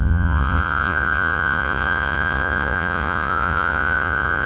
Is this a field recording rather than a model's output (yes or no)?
no